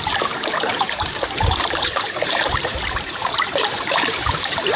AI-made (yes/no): yes